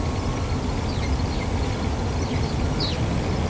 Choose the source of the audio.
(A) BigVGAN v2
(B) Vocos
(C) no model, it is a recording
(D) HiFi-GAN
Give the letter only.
C